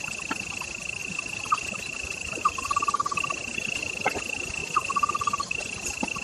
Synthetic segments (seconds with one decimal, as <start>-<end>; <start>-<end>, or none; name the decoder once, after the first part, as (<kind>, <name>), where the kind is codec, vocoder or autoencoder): 1.0-2.4 (vocoder, BigVGAN v2); 4.6-5.6